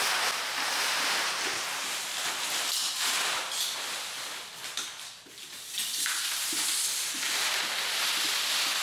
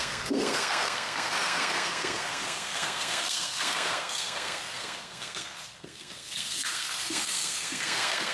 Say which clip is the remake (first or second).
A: second